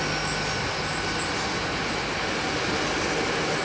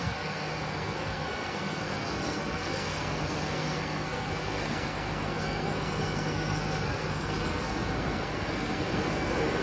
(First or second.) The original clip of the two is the first